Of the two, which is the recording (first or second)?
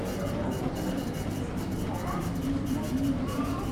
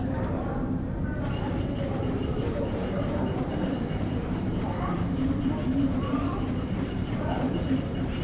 first